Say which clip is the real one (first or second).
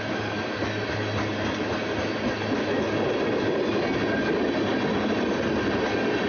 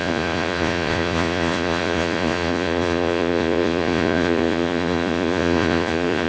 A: first